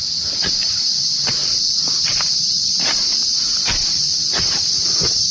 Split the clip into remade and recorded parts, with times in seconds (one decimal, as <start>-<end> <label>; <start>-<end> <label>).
0.0-5.3 recorded